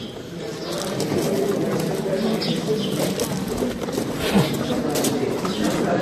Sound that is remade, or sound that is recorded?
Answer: recorded